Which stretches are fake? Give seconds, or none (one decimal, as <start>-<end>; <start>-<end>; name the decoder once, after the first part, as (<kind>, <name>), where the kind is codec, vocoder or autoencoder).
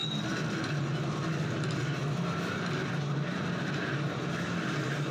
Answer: none